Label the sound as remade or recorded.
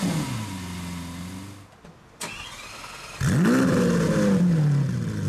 recorded